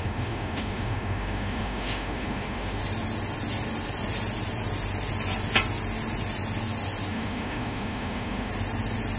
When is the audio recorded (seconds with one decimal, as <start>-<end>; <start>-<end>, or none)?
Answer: 2.8-7.1; 8.5-9.2